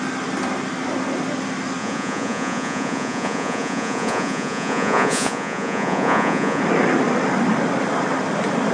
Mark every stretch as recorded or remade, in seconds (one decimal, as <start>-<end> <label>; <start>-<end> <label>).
0.0-1.8 recorded; 1.8-6.6 remade; 6.6-8.7 recorded